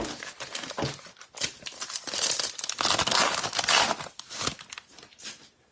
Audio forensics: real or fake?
real